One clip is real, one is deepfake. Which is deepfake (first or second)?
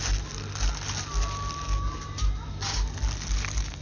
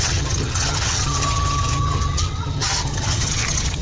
second